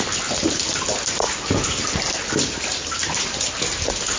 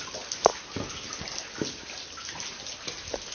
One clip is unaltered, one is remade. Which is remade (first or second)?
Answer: first